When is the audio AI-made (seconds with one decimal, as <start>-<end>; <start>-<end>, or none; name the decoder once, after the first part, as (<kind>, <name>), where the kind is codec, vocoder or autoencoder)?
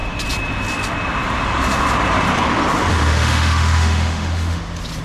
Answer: 2.9-4.6 (autoencoder, DAC-VAE)